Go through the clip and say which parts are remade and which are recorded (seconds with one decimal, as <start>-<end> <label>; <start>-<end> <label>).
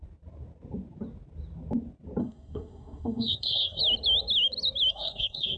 0.0-2.2 recorded; 2.2-3.8 remade; 3.8-4.9 recorded; 4.9-5.6 remade